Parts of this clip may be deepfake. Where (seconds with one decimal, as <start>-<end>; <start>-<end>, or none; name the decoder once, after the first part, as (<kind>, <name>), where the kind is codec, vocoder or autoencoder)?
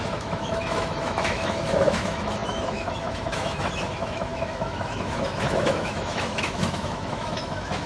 0.0-7.9 (autoencoder, DAC-VAE)